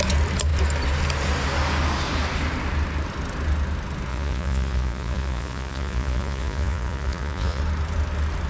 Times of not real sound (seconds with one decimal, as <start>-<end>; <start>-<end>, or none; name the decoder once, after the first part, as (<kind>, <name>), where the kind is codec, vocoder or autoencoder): 4.1-7.6 (vocoder, Vocos)